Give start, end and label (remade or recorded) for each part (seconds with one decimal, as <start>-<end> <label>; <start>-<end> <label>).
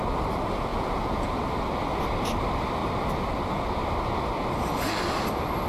0.0-0.7 recorded; 0.7-1.4 remade; 1.4-5.7 recorded